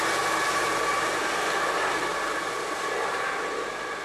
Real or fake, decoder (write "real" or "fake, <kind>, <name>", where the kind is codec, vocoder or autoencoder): real